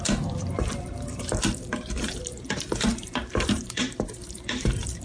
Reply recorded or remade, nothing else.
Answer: remade